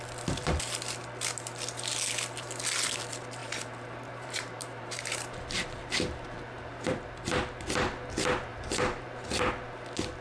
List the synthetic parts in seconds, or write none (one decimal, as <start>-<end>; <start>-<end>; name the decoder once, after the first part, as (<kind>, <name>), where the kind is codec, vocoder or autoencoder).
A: 3.4-7.0 (vocoder, BigVGAN v2); 8.5-9.5